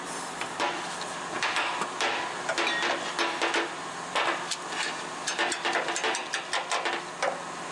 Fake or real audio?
real